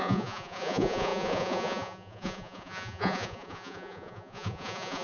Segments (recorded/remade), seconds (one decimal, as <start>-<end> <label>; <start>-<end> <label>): 0.0-5.0 remade